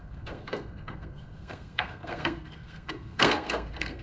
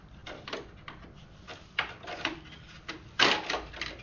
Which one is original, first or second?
second